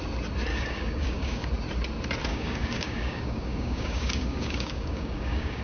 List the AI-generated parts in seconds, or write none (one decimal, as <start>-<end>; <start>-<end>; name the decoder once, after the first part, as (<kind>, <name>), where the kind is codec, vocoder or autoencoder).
0.5-1.5 (codec, DAC); 2.3-5.6